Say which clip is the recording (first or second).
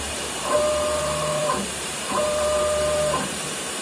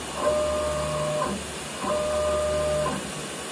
second